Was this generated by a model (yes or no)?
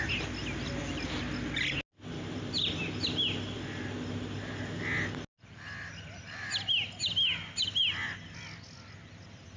no